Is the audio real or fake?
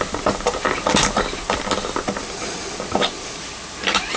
real